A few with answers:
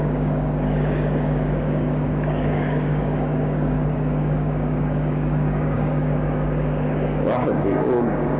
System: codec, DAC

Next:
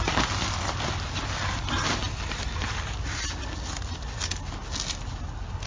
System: none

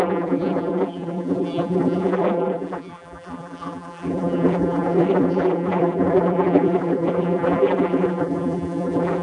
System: vocoder, BigVGAN v2